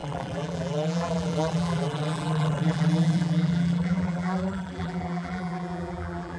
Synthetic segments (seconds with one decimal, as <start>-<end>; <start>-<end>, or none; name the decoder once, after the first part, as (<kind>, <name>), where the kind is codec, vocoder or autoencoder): 0.0-6.4 (vocoder, BigVGAN v2)